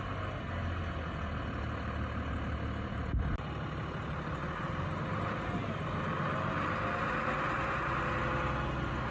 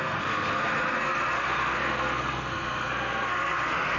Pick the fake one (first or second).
second